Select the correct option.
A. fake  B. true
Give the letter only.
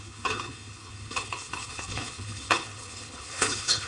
A